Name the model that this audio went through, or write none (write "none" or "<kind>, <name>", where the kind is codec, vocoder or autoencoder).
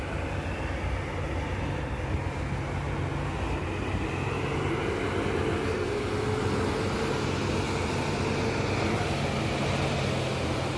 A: none